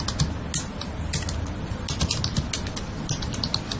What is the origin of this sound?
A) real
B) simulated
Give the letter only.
A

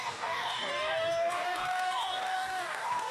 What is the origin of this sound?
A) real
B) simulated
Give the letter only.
B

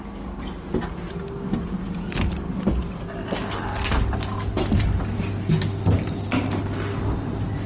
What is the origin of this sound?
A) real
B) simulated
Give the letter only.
A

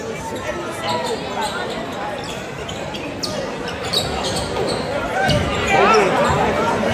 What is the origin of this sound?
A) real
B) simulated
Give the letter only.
A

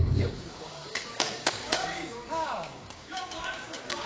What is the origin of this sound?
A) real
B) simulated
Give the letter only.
B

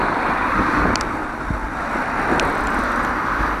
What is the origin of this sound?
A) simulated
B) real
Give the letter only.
B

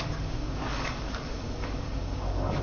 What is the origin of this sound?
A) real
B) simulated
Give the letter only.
B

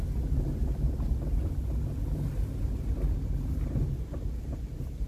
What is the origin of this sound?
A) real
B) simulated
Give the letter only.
A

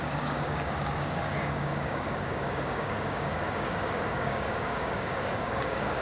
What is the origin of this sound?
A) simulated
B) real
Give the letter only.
A